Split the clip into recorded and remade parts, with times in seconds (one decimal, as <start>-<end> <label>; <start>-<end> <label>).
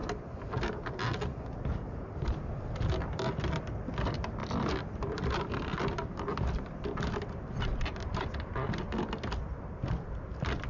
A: 0.0-4.4 recorded; 4.4-8.2 remade; 8.2-10.7 recorded